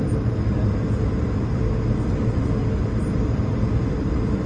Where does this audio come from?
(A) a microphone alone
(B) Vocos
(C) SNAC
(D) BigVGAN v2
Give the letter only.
A